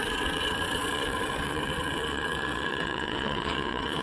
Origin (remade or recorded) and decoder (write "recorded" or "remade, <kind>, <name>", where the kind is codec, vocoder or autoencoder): remade, vocoder, WaveNeXt